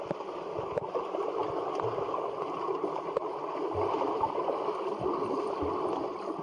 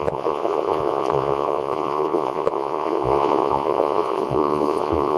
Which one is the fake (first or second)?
second